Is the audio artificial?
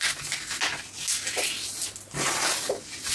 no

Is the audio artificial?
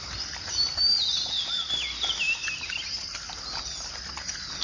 no